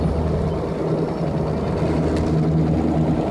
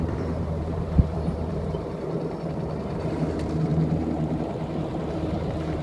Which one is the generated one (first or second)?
second